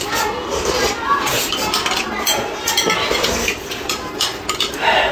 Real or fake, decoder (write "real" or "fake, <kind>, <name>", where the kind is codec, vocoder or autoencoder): real